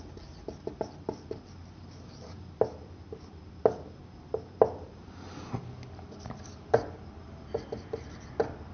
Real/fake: real